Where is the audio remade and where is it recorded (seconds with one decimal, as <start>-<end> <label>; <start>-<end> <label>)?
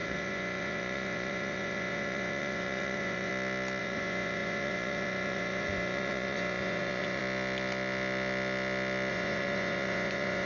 0.0-3.3 remade; 3.3-3.8 recorded; 3.8-7.2 remade; 7.2-9.1 recorded; 9.1-10.5 remade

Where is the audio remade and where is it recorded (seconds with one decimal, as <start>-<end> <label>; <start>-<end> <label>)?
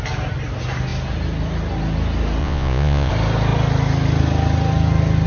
0.0-2.4 recorded; 2.4-3.1 remade; 3.1-5.3 recorded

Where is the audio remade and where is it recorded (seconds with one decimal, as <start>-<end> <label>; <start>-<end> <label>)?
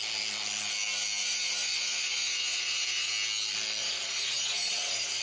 0.0-1.2 recorded; 1.2-3.1 remade; 3.1-3.8 recorded; 3.8-5.2 remade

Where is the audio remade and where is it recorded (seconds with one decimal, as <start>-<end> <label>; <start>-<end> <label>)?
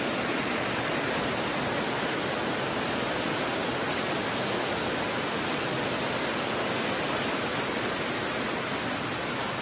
0.0-9.6 recorded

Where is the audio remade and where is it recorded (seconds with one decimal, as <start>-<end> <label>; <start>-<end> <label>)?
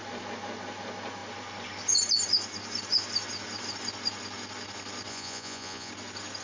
0.0-5.1 recorded; 5.1-5.9 remade; 5.9-6.4 recorded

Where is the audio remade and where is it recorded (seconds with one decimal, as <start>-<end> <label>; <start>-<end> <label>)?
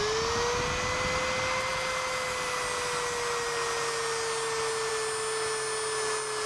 0.0-6.5 recorded